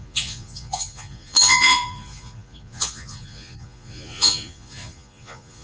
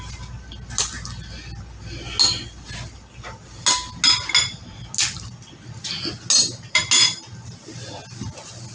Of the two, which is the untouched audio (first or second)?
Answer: second